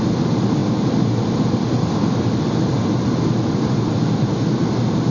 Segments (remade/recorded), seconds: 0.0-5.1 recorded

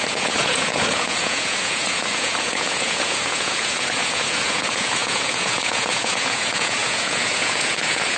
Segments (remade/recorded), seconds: 0.0-8.2 remade

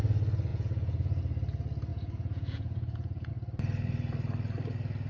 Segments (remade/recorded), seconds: 0.0-0.5 recorded; 0.5-1.2 remade; 1.2-1.9 recorded; 1.9-3.3 remade; 3.3-5.1 recorded

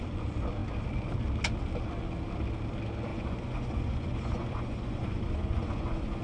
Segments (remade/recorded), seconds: 0.0-3.1 recorded; 3.1-6.2 remade

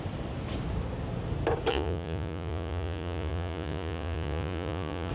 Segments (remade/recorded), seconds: 0.0-1.7 recorded; 1.7-5.1 remade

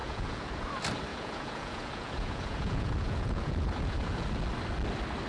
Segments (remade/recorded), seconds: 0.0-0.5 remade; 0.5-1.1 recorded; 1.1-4.3 remade; 4.3-5.3 recorded

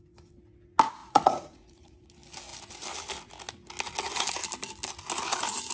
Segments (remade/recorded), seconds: 0.0-1.0 recorded; 1.0-2.1 remade; 2.1-5.7 recorded